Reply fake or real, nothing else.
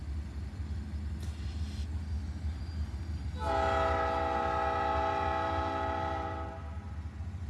real